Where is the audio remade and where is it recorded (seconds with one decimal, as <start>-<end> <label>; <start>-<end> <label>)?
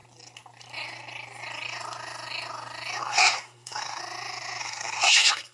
0.0-3.0 recorded; 3.0-4.0 remade; 4.0-4.6 recorded; 4.6-5.5 remade